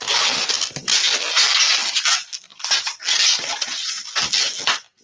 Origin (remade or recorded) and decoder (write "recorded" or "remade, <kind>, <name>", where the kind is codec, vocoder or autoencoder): recorded